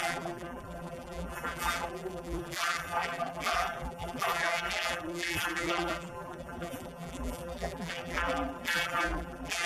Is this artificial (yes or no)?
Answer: yes